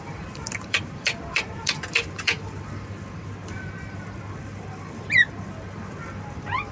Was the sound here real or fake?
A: fake